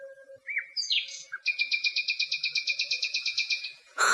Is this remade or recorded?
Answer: remade